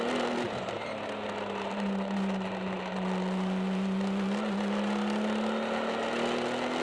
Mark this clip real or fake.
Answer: real